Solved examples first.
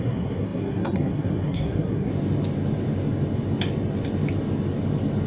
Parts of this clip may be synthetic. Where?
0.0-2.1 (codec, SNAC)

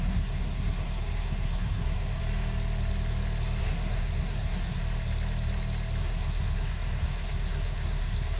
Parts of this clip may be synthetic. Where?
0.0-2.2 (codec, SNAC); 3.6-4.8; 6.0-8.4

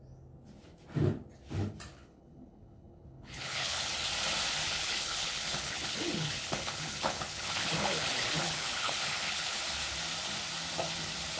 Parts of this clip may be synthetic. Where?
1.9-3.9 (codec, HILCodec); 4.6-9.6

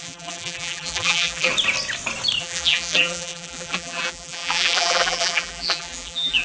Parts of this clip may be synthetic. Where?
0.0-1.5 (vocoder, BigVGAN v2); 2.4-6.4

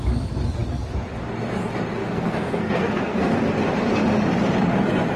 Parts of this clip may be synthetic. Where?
2.0-3.3 (codec, SNAC)

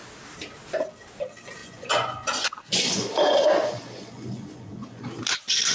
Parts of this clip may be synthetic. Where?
1.6-5.0 (vocoder, Vocos)